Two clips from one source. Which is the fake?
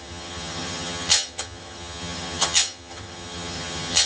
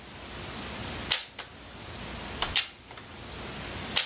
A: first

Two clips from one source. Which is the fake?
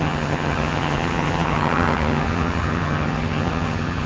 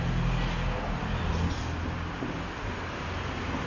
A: first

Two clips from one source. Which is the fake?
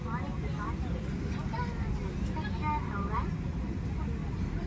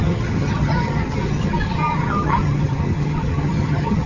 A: second